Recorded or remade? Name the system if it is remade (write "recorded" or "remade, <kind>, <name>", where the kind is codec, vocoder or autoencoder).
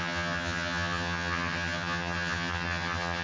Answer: remade, vocoder, HiFi-GAN